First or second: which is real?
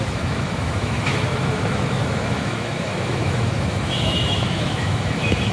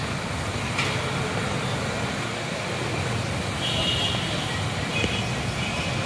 second